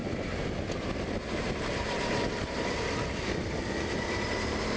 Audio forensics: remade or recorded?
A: recorded